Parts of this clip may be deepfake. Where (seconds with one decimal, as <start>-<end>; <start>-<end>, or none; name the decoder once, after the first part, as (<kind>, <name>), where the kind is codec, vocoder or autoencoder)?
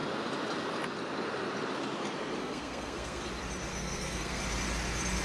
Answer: 2.4-3.2 (codec, SNAC); 3.7-4.4